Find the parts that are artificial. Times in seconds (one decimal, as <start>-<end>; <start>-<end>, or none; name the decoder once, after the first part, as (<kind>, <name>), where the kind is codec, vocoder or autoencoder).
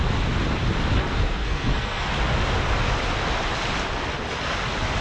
1.0-2.1 (codec, SNAC)